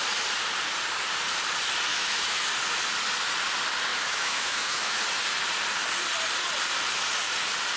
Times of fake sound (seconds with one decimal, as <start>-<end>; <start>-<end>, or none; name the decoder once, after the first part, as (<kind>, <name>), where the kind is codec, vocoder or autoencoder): 1.9-2.5 (autoencoder, DAC-VAE); 3.9-5.0